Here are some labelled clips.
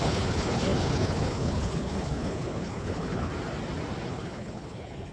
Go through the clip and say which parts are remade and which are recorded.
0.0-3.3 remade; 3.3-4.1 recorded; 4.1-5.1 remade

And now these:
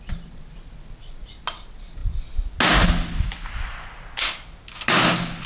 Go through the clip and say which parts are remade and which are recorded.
0.0-5.5 recorded

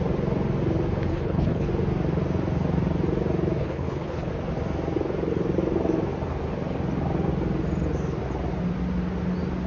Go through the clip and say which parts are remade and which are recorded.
0.0-1.1 recorded; 1.1-1.7 remade; 1.7-3.6 recorded; 3.6-4.3 remade; 4.3-9.7 recorded